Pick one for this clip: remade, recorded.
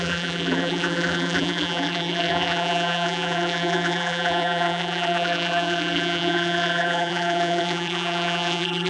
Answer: remade